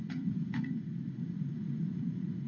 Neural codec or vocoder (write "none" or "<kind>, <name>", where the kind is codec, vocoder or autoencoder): vocoder, Vocos